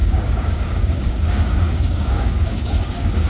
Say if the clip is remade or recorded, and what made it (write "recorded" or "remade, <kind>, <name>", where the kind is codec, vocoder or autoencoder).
remade, codec, DAC